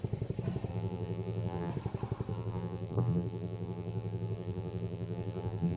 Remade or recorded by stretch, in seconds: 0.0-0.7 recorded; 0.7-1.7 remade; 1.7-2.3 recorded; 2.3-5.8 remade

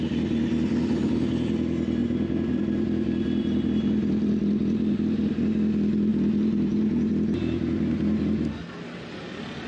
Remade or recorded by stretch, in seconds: 0.0-2.0 recorded; 2.0-5.2 remade; 5.2-6.1 recorded; 6.1-7.1 remade; 7.1-9.7 recorded